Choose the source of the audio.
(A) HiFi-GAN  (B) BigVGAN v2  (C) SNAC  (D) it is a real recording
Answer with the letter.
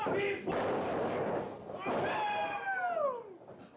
D